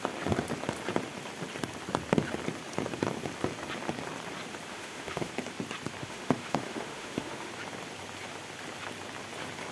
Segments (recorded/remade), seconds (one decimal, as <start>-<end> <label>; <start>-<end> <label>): 0.0-4.7 recorded; 4.7-5.3 remade; 5.3-6.0 recorded; 6.0-7.5 remade; 7.5-9.7 recorded

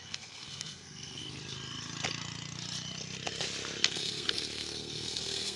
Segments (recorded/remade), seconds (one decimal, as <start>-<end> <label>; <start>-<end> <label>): 0.0-1.2 remade; 1.2-3.9 recorded; 3.9-5.6 remade

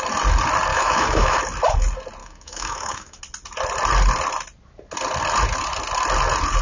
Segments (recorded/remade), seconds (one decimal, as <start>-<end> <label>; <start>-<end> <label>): 0.0-0.7 recorded; 0.7-1.4 remade; 1.4-2.2 recorded; 2.2-3.2 remade; 3.2-6.6 recorded

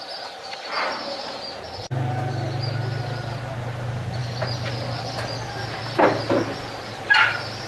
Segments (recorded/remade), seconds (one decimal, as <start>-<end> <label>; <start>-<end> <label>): 0.0-7.7 recorded

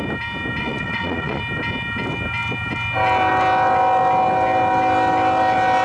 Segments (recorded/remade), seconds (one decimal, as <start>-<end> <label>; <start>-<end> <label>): 0.0-0.6 recorded; 0.6-1.4 remade; 1.4-5.8 recorded

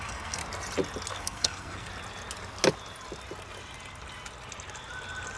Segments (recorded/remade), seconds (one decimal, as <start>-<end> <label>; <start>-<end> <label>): 0.0-0.4 remade; 0.4-1.1 recorded; 1.1-1.9 remade; 1.9-5.4 recorded

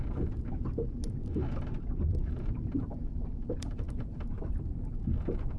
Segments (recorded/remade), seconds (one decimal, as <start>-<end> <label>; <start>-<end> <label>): 0.0-2.2 recorded; 2.2-4.7 remade; 4.7-5.6 recorded

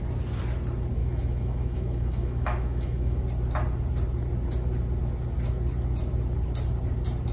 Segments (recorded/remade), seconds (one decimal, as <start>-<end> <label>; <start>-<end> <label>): 0.0-1.0 recorded; 1.0-3.2 remade; 3.2-7.3 recorded